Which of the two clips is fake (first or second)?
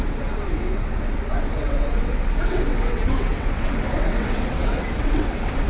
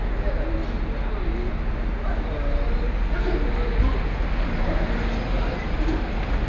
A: first